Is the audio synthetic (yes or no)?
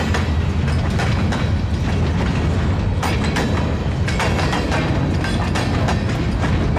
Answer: no